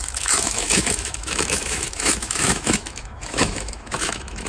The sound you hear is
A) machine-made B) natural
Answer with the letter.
A